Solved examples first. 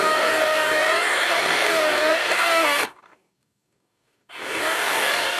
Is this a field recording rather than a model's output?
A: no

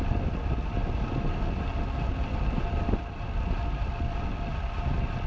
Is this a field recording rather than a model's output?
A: yes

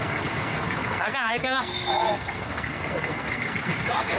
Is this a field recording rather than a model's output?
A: no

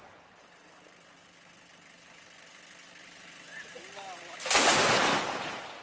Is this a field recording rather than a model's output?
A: yes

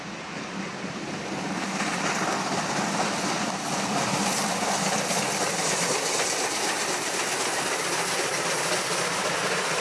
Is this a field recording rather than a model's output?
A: yes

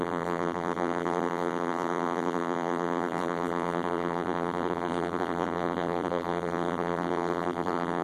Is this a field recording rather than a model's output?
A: no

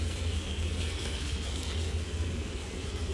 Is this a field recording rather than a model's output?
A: no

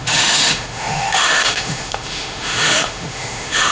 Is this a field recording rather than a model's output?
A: no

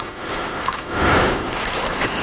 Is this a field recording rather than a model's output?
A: no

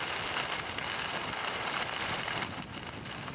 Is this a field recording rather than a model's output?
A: yes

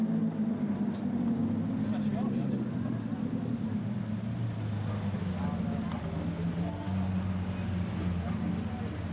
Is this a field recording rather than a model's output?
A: yes